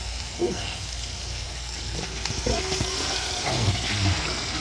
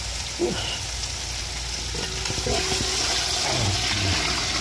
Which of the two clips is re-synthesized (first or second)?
first